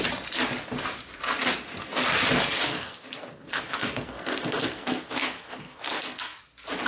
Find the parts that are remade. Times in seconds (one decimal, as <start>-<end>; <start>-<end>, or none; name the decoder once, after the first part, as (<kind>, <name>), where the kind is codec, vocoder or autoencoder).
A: 2.7-6.4 (codec, SNAC)